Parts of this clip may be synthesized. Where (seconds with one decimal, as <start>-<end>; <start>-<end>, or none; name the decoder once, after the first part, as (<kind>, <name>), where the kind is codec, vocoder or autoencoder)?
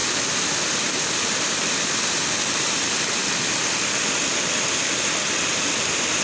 none